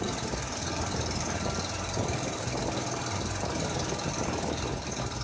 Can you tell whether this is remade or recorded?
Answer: remade